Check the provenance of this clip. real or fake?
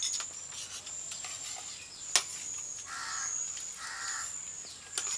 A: real